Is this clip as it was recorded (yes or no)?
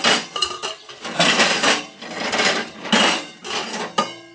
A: yes